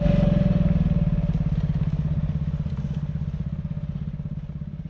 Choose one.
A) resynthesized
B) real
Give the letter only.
B